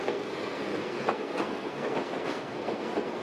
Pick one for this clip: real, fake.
fake